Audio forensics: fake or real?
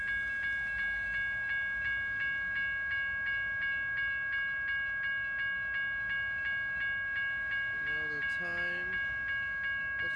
real